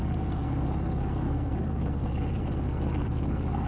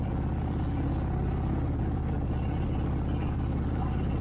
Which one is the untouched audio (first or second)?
second